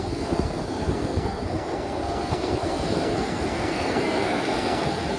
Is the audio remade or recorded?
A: remade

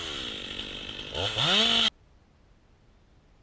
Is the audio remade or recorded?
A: recorded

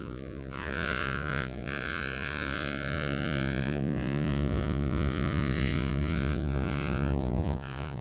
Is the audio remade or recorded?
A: remade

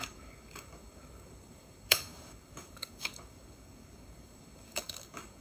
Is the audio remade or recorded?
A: remade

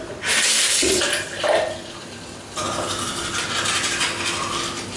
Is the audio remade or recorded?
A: recorded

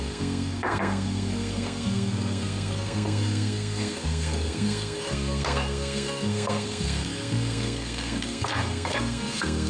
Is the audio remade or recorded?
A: remade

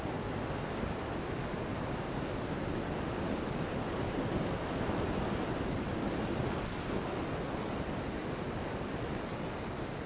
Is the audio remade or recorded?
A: recorded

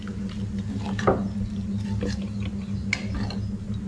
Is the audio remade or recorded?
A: recorded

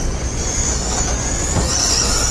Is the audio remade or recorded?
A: remade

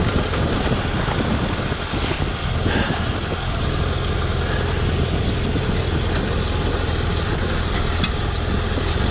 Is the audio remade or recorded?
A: recorded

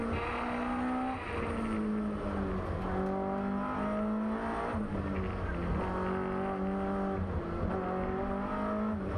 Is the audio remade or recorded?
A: recorded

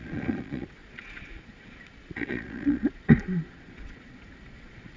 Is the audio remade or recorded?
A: remade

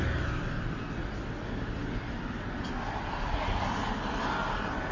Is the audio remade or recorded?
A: recorded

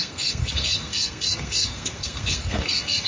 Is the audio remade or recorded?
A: remade